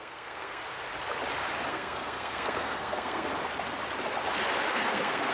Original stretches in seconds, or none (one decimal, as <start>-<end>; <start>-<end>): 0.6-1.7; 3.3-4.7